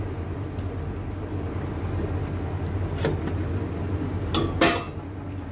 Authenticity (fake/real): real